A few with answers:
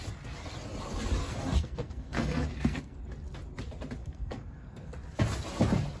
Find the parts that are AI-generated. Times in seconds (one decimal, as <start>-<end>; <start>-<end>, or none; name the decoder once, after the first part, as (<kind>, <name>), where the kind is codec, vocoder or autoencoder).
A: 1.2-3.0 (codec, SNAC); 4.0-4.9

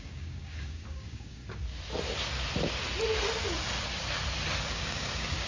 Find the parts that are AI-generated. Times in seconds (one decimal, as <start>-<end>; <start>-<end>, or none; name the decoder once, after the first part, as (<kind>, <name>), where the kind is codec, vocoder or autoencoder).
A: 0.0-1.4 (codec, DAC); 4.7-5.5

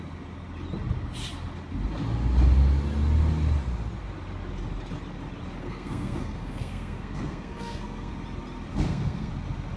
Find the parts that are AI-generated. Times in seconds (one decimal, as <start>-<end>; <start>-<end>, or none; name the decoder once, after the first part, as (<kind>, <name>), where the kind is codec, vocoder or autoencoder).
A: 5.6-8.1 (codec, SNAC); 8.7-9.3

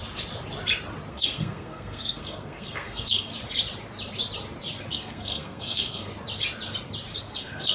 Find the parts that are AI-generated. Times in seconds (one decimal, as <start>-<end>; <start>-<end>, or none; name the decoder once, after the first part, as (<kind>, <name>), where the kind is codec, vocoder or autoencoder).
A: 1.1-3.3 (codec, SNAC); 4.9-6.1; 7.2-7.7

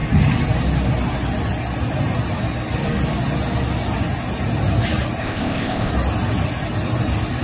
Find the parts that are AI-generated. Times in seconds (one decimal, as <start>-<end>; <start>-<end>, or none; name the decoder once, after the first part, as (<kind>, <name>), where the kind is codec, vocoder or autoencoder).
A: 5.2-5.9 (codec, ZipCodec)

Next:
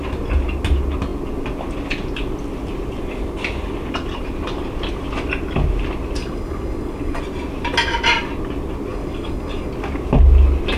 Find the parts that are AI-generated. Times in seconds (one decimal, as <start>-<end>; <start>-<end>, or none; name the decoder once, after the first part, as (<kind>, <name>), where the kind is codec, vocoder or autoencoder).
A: 6.2-7.2 (codec, DAC); 8.9-9.7

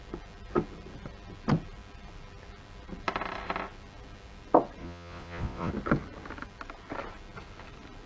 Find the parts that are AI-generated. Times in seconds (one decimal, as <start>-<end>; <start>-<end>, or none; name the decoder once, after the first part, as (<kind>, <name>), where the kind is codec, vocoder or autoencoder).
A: 4.8-5.7 (vocoder, Vocos)

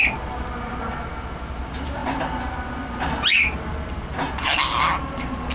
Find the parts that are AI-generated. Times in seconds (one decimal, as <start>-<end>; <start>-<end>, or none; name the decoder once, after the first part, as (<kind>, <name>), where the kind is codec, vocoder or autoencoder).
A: none